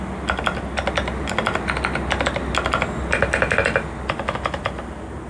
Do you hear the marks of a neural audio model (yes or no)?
no